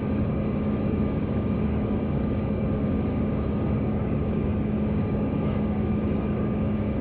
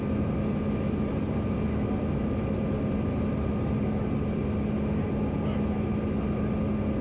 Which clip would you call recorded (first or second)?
second